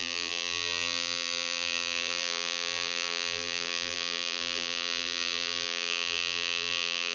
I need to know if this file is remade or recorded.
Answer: remade